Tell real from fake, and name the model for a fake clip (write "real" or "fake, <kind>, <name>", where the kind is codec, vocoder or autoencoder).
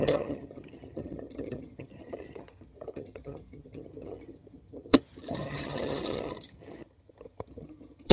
fake, vocoder, HiFi-GAN